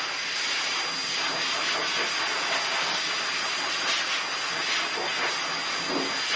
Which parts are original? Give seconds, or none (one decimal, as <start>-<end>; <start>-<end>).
0.0-6.4

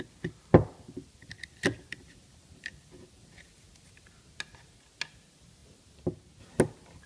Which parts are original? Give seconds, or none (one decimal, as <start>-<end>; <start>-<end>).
0.0-1.2; 3.4-7.1

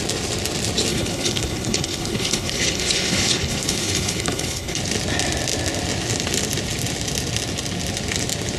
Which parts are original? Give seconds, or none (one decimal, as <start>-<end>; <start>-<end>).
0.0-0.9; 4.8-8.6

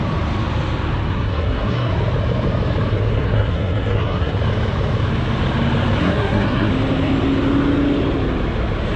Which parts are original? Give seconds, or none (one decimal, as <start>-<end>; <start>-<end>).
0.0-1.1; 1.9-2.9; 4.4-6.0; 6.7-9.0

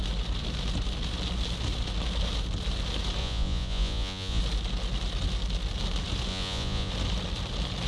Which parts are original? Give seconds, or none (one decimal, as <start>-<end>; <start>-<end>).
0.0-3.2; 4.4-6.3; 6.9-7.9

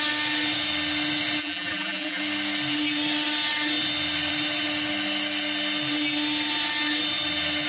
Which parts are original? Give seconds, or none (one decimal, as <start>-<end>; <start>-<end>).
0.0-1.4; 2.2-7.7